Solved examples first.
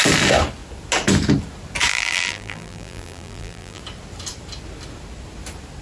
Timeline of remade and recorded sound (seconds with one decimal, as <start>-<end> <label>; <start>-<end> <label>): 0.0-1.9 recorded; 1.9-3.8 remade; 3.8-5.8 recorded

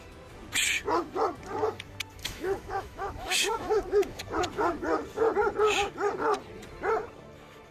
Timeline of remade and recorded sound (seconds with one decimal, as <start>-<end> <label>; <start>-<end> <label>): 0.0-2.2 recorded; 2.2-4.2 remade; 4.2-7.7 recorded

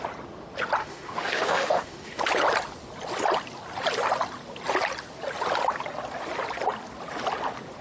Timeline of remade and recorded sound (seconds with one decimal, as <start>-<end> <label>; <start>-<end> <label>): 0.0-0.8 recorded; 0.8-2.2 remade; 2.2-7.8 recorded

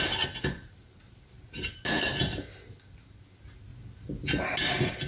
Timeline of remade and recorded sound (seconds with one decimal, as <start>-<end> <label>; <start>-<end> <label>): 0.0-5.1 recorded

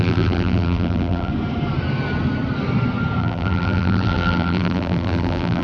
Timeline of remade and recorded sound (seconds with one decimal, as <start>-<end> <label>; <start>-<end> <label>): 0.0-1.3 remade; 1.3-3.2 recorded; 3.2-5.6 remade